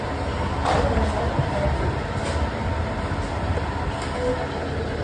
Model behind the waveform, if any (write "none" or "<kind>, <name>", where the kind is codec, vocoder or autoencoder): none